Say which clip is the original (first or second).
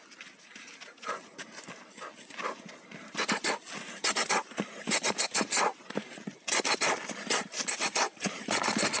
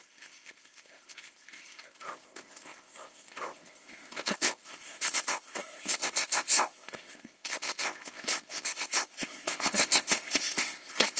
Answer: first